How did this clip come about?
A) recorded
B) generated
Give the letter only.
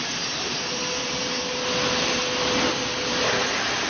A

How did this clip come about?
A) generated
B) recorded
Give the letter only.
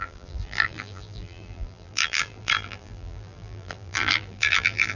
A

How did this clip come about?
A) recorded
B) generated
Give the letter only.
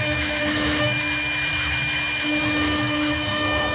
B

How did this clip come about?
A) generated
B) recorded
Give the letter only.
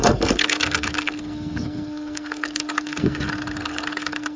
A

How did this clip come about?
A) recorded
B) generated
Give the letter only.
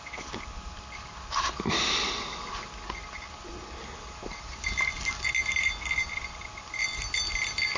A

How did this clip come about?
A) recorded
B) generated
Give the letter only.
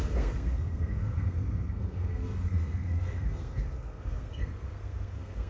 B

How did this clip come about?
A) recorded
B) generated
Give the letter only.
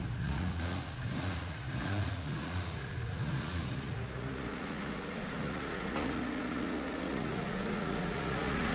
B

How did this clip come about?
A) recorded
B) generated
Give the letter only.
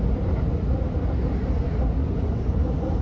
A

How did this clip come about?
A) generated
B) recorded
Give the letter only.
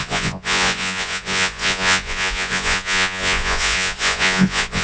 A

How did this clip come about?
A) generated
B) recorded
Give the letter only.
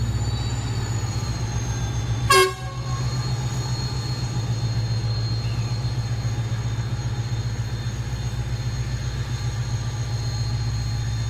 B